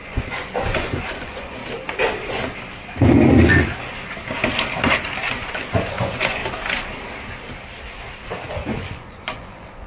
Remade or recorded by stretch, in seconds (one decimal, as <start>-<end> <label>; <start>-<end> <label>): 0.0-1.6 remade; 1.6-5.3 recorded; 5.3-6.4 remade; 6.4-8.5 recorded; 8.5-9.9 remade